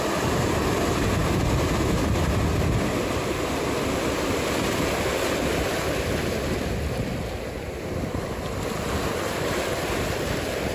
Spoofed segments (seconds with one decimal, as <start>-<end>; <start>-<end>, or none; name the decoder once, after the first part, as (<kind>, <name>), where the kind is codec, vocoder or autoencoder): none